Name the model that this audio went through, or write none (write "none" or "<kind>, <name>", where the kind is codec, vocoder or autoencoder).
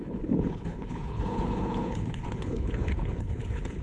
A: codec, HILCodec